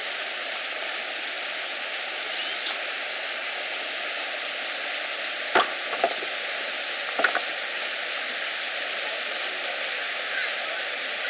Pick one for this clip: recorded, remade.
recorded